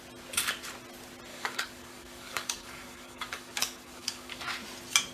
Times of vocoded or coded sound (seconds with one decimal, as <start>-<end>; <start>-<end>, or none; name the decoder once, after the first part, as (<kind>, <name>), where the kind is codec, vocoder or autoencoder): 1.3-4.4 (codec, DAC)